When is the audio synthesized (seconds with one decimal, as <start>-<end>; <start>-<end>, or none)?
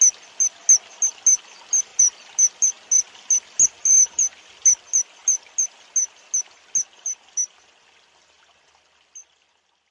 none